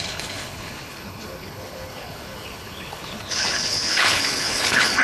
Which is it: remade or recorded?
remade